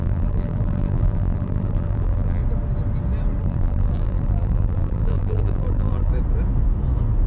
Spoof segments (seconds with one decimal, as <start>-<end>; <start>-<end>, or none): 0.0-2.4; 3.4-6.1